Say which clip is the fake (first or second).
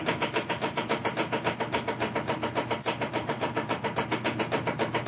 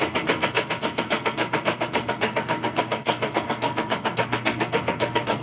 second